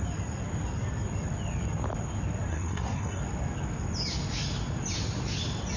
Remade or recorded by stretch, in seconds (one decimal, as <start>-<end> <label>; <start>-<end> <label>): 0.0-2.5 recorded; 2.5-3.2 remade; 3.2-5.8 recorded